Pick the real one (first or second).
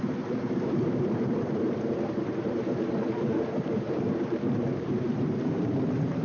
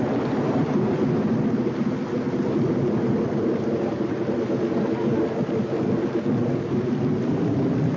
second